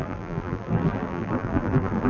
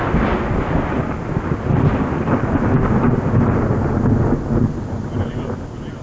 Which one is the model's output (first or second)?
first